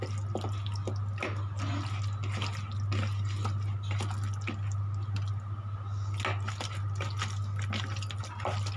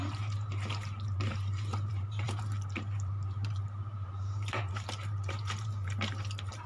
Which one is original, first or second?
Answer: first